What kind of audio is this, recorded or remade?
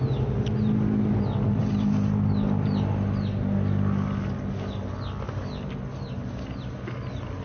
recorded